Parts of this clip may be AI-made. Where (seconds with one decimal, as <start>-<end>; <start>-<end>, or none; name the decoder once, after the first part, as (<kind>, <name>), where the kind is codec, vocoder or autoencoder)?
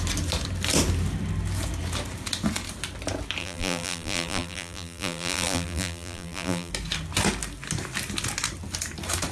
3.4-6.7 (vocoder, BigVGAN v2)